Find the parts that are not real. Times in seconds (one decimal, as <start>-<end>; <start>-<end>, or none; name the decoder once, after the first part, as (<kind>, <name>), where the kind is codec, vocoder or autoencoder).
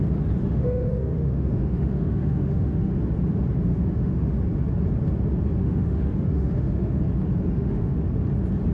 0.4-2.9 (autoencoder, DAC-VAE); 3.7-4.3; 5.6-7.0; 7.5-8.0